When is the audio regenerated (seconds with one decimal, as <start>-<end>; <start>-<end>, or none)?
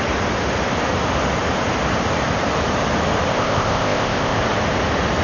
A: 3.3-4.4